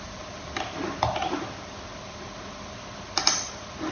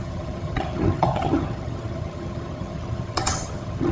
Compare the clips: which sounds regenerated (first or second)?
second